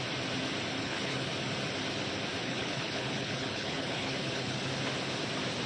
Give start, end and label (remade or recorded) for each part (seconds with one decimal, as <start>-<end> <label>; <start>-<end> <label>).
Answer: 0.0-0.8 recorded; 0.8-1.3 remade; 1.3-2.4 recorded; 2.4-4.7 remade; 4.7-5.7 recorded